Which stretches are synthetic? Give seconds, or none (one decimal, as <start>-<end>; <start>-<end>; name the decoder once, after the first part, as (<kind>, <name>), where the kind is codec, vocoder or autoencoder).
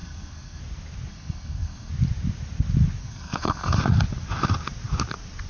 0.0-0.6 (codec, SNAC); 1.1-1.9; 3.0-3.8